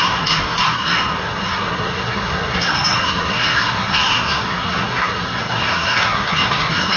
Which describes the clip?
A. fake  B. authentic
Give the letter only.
A